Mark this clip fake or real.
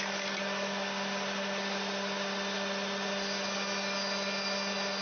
real